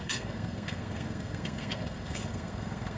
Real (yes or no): no